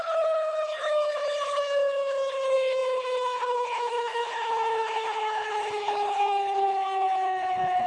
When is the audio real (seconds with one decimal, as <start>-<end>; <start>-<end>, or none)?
none